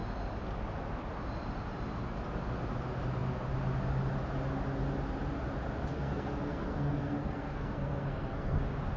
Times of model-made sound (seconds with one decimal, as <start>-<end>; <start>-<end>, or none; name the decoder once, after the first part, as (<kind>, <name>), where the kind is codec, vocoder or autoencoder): 5.9-8.6 (codec, SNAC)